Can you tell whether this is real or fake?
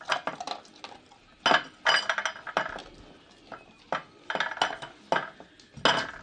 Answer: real